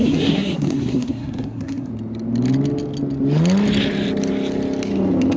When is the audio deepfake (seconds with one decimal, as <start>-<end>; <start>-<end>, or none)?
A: 0.0-1.9